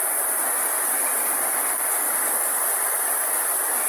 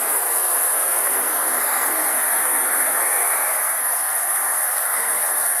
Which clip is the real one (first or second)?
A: first